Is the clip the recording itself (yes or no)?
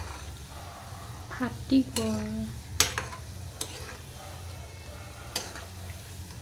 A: yes